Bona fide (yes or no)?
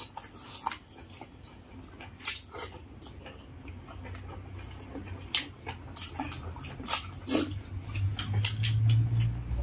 yes